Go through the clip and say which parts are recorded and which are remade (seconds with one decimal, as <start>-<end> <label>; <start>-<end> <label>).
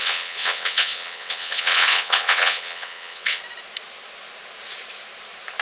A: 0.0-3.4 remade; 3.4-5.6 recorded